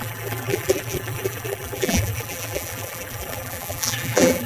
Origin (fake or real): fake